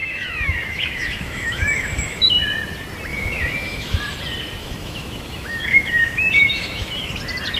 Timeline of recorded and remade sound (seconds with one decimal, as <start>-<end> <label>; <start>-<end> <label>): 0.0-2.4 remade; 2.4-3.1 recorded; 3.1-4.0 remade; 4.0-4.6 recorded; 4.6-7.1 remade; 7.1-7.6 recorded

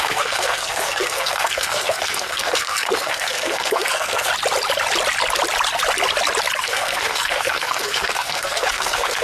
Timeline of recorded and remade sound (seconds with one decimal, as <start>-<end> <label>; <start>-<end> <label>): 0.0-4.3 remade; 4.3-6.6 recorded; 6.6-9.2 remade

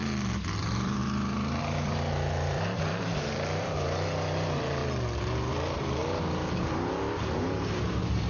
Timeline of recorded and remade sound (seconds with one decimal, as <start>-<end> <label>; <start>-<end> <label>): 0.0-0.6 recorded; 0.6-4.8 remade; 4.8-5.5 recorded; 5.5-6.0 remade; 6.0-6.6 recorded; 6.6-8.3 remade

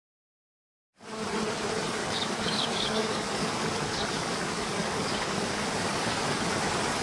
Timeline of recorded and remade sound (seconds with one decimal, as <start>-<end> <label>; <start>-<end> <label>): 0.0-2.0 recorded; 2.0-6.2 remade; 6.2-7.0 recorded

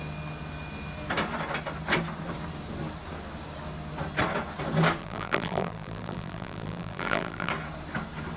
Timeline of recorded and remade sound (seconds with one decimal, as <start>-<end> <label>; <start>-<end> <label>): 0.0-5.0 recorded; 5.0-7.5 remade; 7.5-8.4 recorded

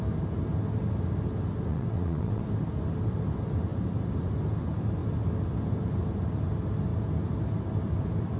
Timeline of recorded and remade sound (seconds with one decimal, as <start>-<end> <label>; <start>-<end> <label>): 0.0-1.7 recorded; 1.7-2.4 remade; 2.4-8.4 recorded